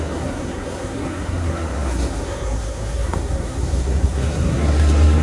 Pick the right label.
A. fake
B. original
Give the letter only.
A